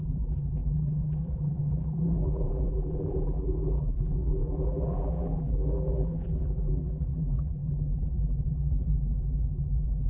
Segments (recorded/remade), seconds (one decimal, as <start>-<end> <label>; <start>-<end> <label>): 0.0-10.1 remade